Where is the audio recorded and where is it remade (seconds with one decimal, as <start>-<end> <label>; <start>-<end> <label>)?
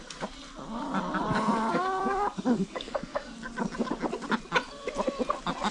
0.0-1.7 recorded; 1.7-3.3 remade; 3.3-5.7 recorded